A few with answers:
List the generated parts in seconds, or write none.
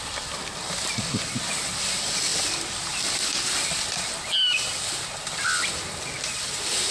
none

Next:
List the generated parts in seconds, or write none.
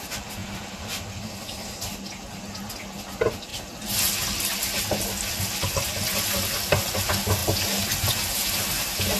none